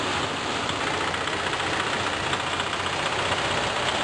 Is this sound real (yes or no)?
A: yes